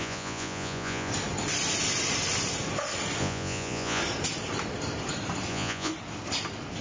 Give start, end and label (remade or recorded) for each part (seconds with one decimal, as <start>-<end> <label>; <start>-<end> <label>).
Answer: 0.0-1.1 remade; 1.1-3.2 recorded; 3.2-4.0 remade; 4.0-5.5 recorded; 5.5-5.9 remade; 5.9-6.8 recorded